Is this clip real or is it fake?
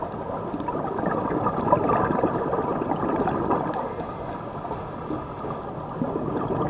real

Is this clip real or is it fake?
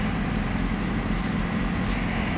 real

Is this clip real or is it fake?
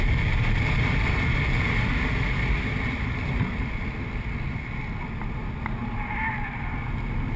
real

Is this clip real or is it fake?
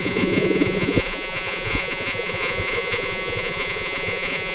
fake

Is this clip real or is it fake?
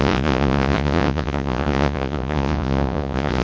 fake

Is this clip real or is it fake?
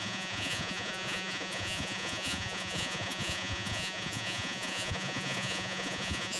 fake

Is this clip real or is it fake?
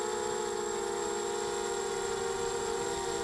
real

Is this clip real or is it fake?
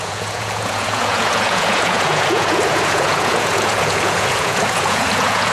fake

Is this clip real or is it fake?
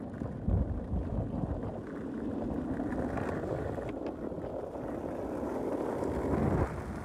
real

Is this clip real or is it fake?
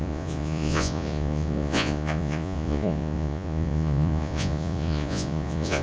fake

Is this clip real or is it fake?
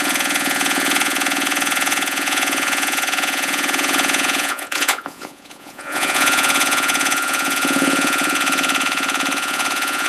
fake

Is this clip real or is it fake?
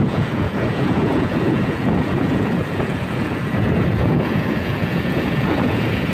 fake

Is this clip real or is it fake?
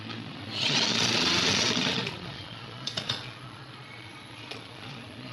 fake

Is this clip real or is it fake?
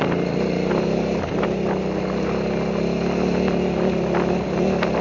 real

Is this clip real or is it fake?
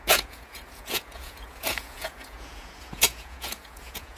fake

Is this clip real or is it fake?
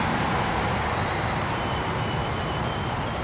real